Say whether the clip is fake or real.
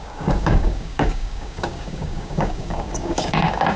fake